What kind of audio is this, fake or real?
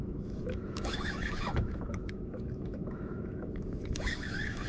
fake